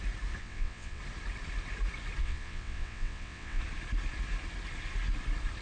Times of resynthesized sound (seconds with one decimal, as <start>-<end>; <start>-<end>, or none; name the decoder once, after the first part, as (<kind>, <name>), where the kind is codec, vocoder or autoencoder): 0.4-1.0 (vocoder, WaveNeXt); 2.2-3.6